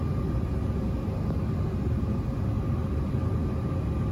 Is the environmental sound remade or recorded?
recorded